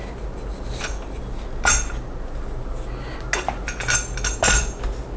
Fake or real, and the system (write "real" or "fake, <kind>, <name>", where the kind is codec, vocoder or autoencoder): real